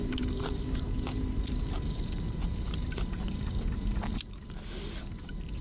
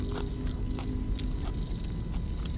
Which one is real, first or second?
second